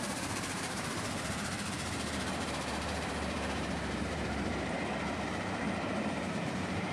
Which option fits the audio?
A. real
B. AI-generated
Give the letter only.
B